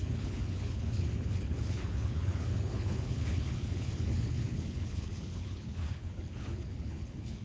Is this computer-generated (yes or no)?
yes